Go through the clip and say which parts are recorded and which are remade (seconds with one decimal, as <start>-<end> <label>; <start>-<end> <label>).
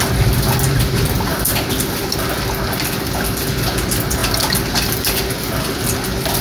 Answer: 0.0-1.3 recorded; 1.3-2.1 remade; 2.1-4.2 recorded; 4.2-5.7 remade; 5.7-6.4 recorded